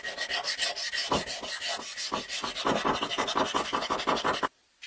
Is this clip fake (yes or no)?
no